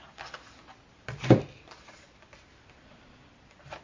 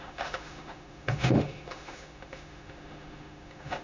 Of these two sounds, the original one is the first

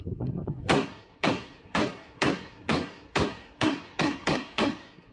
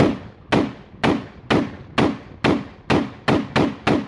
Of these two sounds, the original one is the second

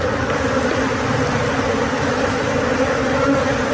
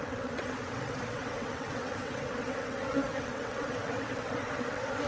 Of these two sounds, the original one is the first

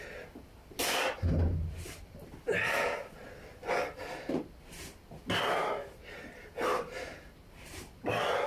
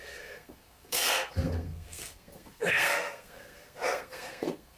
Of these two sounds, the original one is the first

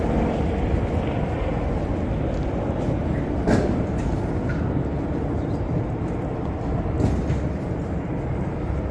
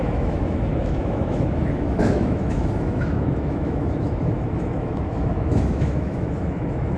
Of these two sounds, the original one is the first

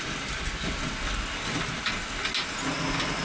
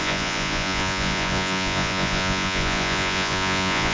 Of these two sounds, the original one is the first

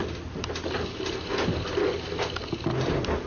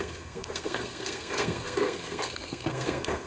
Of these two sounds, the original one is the first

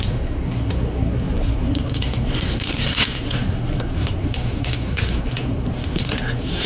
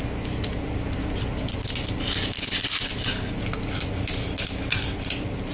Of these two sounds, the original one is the second